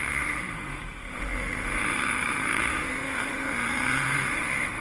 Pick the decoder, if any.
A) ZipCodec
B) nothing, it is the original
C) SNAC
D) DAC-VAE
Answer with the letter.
D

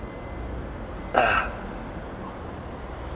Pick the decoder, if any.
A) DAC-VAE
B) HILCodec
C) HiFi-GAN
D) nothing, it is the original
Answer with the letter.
D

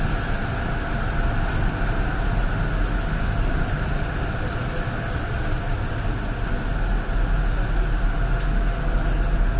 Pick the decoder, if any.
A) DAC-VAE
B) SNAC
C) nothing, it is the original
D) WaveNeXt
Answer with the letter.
C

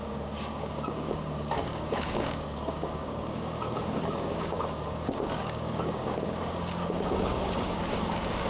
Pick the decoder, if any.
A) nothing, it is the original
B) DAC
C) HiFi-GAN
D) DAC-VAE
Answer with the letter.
B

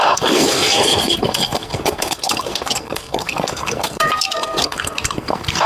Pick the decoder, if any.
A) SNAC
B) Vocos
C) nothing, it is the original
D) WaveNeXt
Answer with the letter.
A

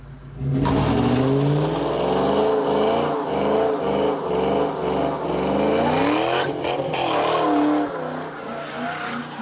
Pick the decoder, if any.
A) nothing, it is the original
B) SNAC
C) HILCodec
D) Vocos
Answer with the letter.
A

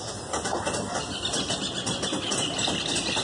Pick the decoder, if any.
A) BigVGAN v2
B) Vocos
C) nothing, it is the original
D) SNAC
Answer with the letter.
C